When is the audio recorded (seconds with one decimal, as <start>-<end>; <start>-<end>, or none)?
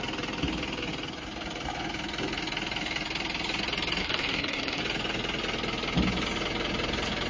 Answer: 0.0-4.0; 4.8-7.3